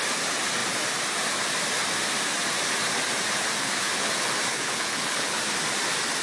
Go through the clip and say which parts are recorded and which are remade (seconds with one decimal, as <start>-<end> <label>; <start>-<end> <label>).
0.0-3.6 recorded; 3.6-4.1 remade; 4.1-4.5 recorded; 4.5-5.4 remade; 5.4-6.2 recorded